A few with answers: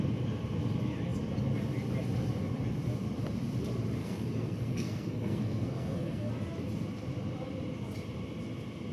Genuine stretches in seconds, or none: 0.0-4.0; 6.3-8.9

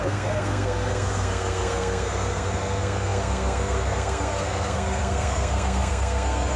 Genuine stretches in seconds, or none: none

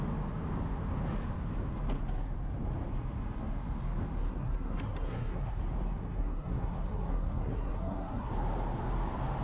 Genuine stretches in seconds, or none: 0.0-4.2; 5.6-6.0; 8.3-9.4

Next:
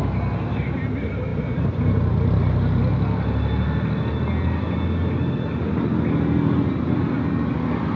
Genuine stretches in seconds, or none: 0.0-8.0

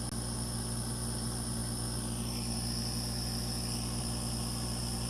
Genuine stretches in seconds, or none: 0.0-5.1